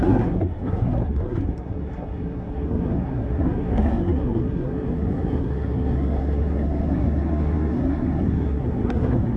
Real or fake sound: fake